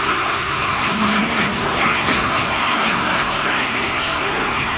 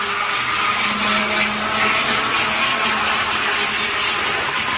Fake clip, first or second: first